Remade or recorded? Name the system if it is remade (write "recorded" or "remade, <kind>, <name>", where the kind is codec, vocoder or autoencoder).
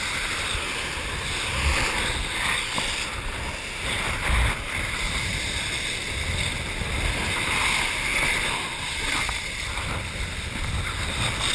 recorded